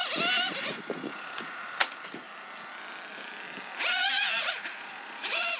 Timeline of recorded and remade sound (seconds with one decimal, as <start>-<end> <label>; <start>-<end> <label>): 0.0-0.6 recorded; 0.6-2.3 remade; 2.3-3.8 recorded; 3.8-5.6 remade